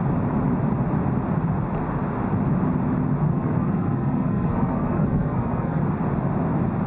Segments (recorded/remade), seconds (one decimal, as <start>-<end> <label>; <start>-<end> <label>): 0.0-3.3 recorded; 3.3-5.8 remade; 5.8-6.9 recorded